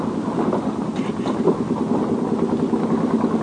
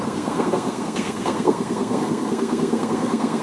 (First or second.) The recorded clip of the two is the first